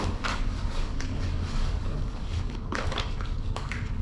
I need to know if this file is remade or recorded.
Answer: remade